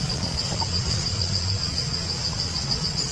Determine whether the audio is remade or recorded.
remade